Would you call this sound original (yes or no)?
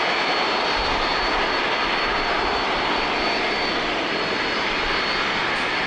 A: yes